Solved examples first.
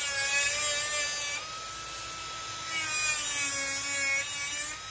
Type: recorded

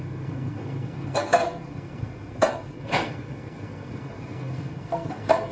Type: remade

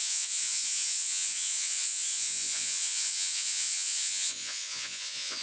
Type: remade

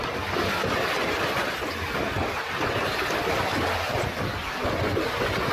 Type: recorded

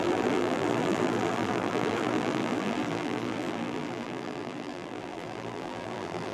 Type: remade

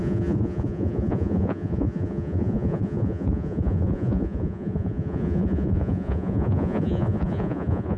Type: remade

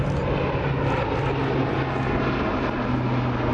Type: recorded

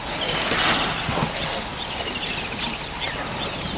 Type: recorded